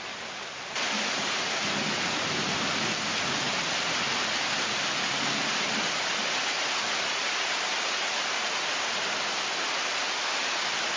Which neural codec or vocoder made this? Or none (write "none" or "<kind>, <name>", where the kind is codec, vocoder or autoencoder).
none